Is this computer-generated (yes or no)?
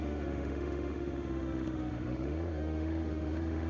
yes